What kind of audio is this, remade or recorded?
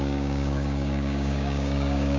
remade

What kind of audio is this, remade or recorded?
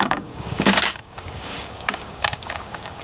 remade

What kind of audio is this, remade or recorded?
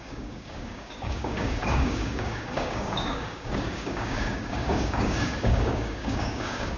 remade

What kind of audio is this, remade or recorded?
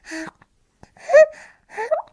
recorded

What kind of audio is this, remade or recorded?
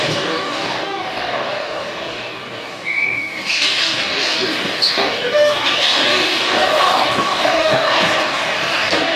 remade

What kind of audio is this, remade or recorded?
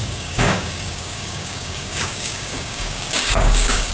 remade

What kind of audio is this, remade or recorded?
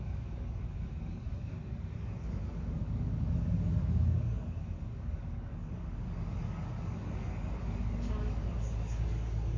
remade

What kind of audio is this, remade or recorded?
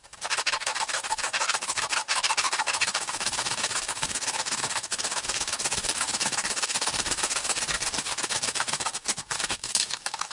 remade